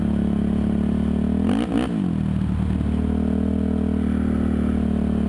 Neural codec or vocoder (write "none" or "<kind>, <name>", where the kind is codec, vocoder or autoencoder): none